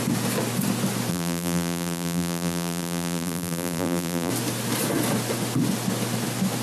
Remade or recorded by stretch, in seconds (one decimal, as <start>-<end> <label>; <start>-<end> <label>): 0.0-1.1 recorded; 1.1-4.3 remade; 4.3-6.6 recorded